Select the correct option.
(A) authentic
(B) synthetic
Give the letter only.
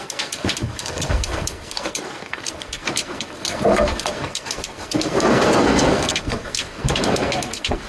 B